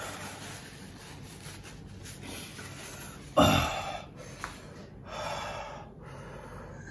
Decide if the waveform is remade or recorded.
recorded